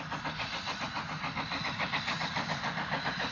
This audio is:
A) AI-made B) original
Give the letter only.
B